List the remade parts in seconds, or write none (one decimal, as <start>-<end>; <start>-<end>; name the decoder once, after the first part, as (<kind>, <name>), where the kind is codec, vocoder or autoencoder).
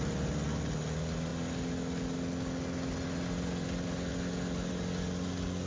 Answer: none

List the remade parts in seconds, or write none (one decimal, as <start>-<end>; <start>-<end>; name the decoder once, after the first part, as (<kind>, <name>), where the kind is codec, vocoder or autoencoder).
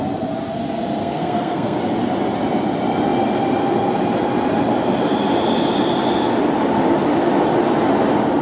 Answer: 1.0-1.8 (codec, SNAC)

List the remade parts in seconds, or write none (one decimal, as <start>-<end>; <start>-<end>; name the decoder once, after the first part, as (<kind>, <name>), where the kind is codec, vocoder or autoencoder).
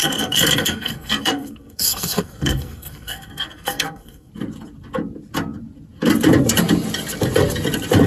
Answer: 0.0-4.3 (codec, SNAC)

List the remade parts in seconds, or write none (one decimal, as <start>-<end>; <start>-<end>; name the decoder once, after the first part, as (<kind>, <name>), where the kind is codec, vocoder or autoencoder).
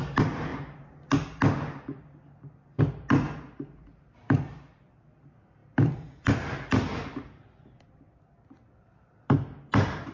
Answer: none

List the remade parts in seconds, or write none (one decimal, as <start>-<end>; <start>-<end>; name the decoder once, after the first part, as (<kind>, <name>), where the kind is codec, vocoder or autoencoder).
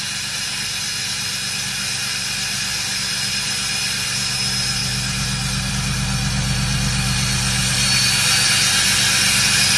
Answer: none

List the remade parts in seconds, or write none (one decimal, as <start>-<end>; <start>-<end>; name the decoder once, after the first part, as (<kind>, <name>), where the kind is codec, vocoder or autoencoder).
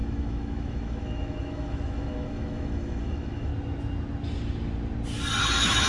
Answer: 0.0-3.5 (autoencoder, DAC-VAE); 5.4-5.9